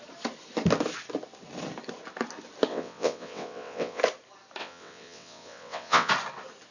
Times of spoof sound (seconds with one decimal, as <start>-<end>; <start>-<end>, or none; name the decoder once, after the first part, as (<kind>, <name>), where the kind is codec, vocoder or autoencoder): 2.7-4.0 (vocoder, WaveNeXt); 4.6-6.1